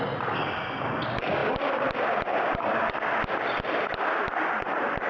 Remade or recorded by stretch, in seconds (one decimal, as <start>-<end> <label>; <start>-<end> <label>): 0.0-5.1 recorded